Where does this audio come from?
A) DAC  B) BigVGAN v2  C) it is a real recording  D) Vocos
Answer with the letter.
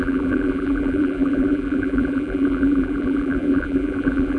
B